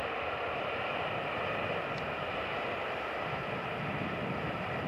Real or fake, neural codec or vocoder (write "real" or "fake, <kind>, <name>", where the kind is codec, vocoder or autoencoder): fake, vocoder, BigVGAN v2